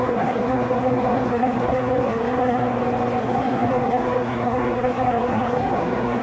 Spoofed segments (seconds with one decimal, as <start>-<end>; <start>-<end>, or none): 0.0-2.7; 3.2-6.2